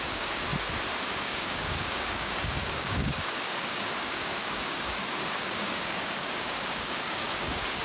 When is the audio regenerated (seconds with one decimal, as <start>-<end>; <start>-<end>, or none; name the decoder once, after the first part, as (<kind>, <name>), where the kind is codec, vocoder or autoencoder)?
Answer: 0.0-0.5 (codec, DAC); 1.1-7.8